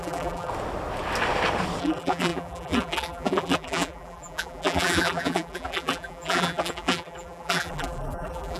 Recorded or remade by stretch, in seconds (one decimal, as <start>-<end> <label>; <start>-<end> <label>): 0.0-0.5 remade; 0.5-1.8 recorded; 1.8-8.6 remade